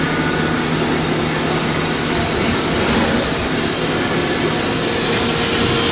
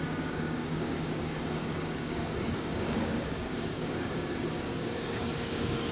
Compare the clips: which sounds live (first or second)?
first